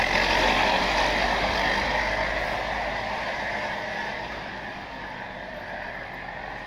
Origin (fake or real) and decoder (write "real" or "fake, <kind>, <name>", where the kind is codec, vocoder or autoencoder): real